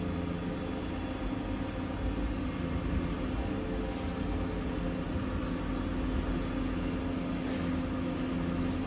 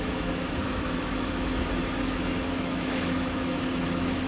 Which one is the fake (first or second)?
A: second